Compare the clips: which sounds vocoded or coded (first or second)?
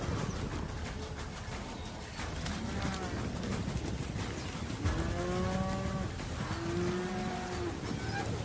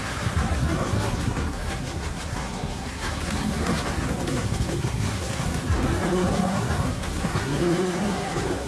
second